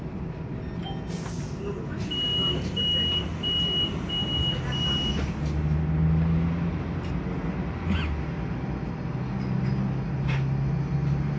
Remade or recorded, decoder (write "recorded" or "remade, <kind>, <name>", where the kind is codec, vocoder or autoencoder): recorded